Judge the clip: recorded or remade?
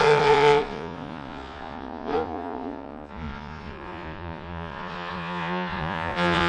remade